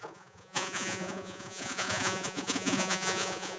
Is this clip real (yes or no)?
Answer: no